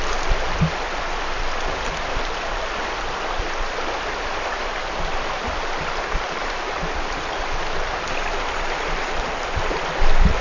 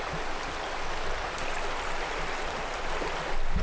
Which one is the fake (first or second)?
first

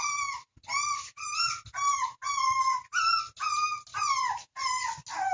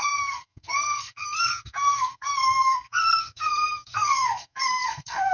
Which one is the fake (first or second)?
second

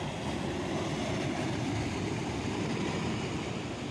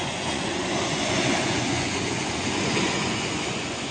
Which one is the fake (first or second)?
second